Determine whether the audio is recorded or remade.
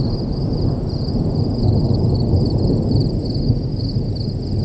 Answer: recorded